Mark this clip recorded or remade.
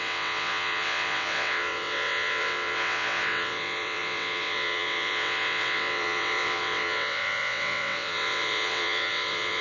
remade